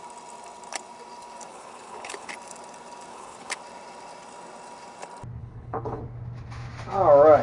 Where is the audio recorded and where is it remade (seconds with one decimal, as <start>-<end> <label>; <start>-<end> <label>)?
0.0-1.5 recorded; 1.5-2.3 remade; 2.3-3.1 recorded; 3.1-3.6 remade; 3.6-5.4 recorded; 5.4-6.0 remade; 6.0-7.4 recorded